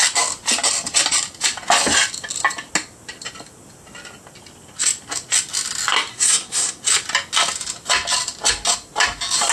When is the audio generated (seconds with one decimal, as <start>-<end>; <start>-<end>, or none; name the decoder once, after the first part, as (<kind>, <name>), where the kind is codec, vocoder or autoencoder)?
6.1-6.8 (codec, SNAC)